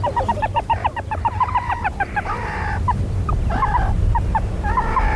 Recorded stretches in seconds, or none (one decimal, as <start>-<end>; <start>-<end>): 0.0-0.4; 3.2-5.2